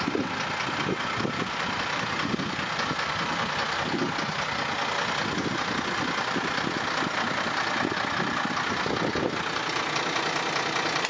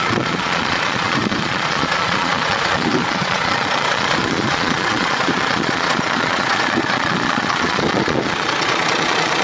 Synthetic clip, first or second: second